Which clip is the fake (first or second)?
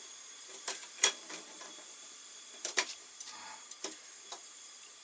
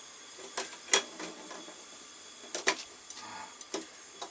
first